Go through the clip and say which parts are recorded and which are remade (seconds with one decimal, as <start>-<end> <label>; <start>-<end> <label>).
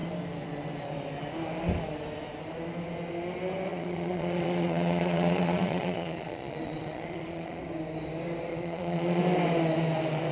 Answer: 0.0-3.7 recorded; 3.7-7.6 remade; 7.6-8.5 recorded; 8.5-9.2 remade; 9.2-10.3 recorded